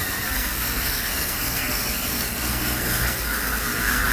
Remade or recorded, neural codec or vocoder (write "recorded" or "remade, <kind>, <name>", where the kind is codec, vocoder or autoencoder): remade, codec, SNAC